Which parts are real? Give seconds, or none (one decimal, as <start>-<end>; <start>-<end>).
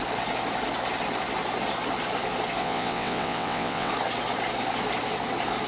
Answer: 0.0-2.6; 3.9-5.7